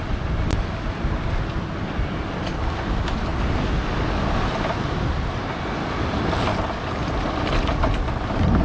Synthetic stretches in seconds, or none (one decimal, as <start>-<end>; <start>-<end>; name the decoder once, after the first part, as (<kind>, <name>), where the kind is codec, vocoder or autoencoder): none